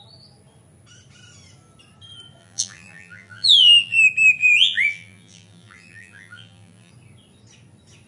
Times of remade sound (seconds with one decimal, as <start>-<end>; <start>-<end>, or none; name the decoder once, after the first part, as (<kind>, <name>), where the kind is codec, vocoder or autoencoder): 2.4-4.0 (vocoder, BigVGAN v2); 4.4-6.9